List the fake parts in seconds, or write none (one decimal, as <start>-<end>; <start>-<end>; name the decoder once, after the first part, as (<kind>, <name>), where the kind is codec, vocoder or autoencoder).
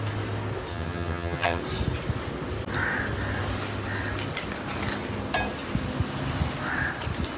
0.7-1.6 (vocoder, HiFi-GAN)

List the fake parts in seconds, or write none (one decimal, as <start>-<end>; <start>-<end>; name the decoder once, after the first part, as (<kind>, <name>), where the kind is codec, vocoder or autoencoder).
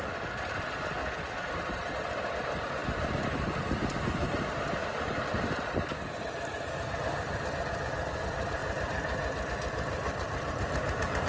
none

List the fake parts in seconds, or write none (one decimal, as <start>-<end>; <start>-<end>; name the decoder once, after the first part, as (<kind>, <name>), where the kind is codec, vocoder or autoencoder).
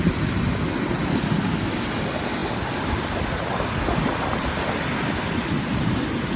none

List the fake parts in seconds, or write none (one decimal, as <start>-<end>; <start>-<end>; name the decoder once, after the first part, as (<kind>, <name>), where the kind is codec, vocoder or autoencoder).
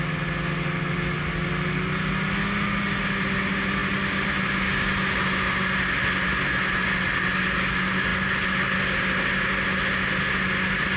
none